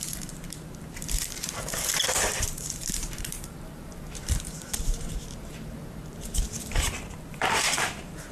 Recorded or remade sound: remade